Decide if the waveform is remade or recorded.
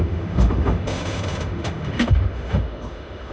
remade